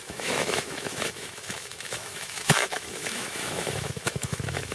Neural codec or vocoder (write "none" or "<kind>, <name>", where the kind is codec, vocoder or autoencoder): autoencoder, DAC-VAE